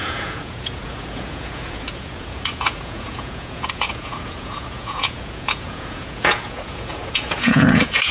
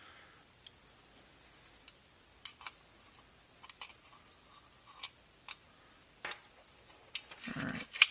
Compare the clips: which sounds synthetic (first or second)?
first